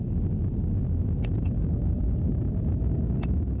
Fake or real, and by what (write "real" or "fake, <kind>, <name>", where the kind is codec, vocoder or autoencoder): real